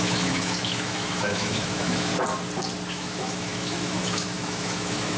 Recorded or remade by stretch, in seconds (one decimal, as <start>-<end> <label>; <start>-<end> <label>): 0.0-2.1 remade; 2.1-2.9 recorded; 2.9-5.2 remade